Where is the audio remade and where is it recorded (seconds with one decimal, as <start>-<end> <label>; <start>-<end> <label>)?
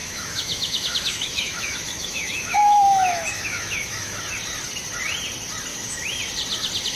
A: 0.0-4.2 remade; 4.2-5.7 recorded; 5.7-6.2 remade; 6.2-7.0 recorded